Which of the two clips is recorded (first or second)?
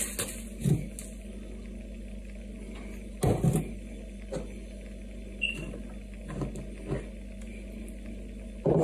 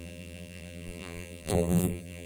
first